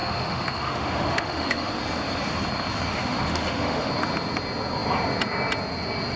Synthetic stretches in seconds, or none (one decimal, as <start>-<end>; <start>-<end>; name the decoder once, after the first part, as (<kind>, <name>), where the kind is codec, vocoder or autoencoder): 0.0-1.7 (autoencoder, DAC-VAE); 2.9-3.9